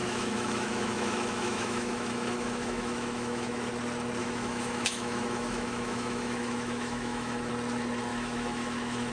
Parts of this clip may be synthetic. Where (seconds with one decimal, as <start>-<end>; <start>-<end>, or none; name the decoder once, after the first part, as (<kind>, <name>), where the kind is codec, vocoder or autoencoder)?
0.0-3.7 (autoencoder, DAC-VAE); 4.2-7.5; 8.1-9.1